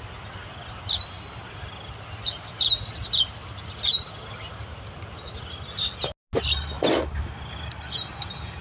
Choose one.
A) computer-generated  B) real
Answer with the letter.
B